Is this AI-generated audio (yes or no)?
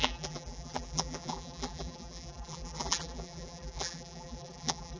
yes